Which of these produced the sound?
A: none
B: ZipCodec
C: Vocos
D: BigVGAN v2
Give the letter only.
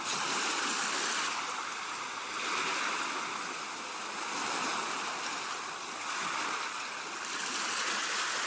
A